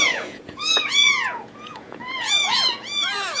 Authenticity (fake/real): fake